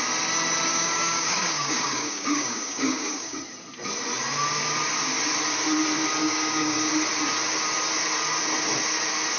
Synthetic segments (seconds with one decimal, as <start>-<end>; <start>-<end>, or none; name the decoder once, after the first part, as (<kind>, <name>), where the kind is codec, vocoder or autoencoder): 0.7-3.4 (codec, DAC); 6.2-6.9